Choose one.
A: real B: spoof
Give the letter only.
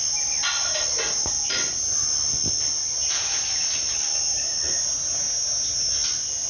A